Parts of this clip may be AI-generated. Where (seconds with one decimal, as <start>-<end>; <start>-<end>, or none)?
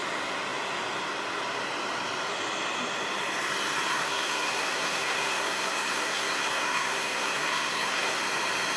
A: 3.9-8.2